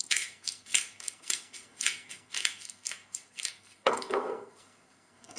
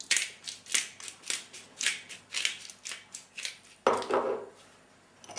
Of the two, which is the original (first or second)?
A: second